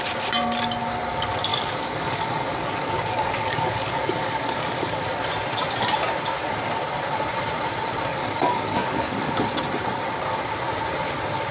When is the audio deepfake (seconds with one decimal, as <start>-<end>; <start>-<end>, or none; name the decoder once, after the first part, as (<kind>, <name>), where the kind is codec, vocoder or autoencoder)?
1.5-5.0 (codec, DAC); 8.1-9.3